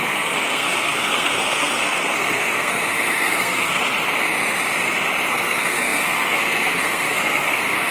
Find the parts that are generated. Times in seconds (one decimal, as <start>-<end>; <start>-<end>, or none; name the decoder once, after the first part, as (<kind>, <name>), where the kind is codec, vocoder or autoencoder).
0.0-3.8 (codec, SNAC); 5.3-7.9